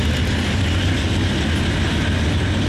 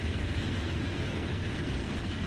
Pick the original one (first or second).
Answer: first